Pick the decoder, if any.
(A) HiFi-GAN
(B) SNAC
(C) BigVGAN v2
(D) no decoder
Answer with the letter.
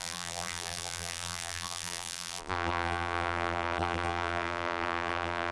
C